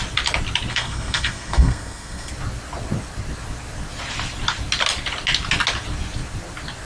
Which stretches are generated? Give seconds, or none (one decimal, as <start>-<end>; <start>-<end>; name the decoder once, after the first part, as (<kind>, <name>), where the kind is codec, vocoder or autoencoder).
0.7-2.3 (codec, SNAC)